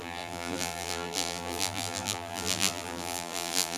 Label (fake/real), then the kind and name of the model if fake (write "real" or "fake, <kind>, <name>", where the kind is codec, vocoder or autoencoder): fake, vocoder, BigVGAN v2